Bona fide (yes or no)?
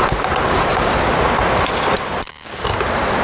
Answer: yes